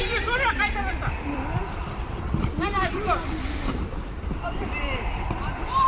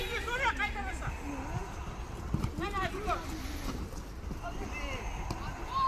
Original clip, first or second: second